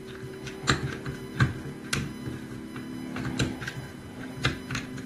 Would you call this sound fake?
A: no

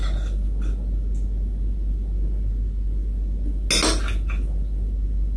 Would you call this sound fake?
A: no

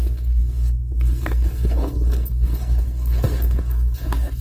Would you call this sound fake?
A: yes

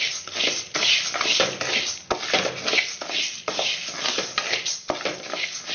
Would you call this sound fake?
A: no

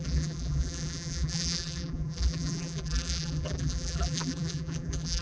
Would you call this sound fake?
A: yes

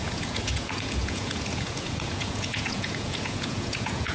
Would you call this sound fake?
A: yes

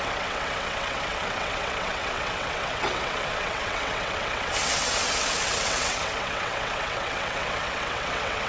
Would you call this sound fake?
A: yes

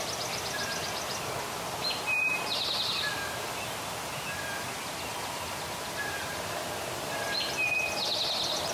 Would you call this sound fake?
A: no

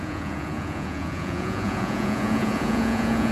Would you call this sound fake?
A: yes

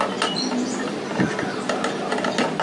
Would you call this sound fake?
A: no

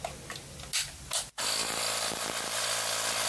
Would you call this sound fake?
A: no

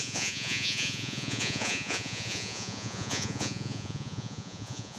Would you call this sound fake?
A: yes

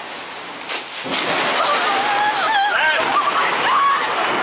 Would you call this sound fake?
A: no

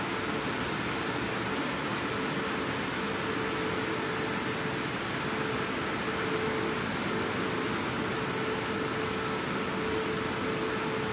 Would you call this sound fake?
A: no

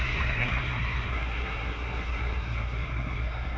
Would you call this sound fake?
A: yes